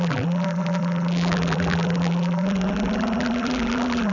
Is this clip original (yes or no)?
no